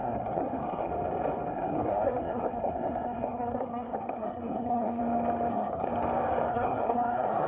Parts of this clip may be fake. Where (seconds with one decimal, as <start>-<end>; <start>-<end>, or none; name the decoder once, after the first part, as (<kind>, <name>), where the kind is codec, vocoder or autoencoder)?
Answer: 0.0-0.9 (codec, SNAC); 1.5-5.0; 5.5-5.9; 6.5-7.5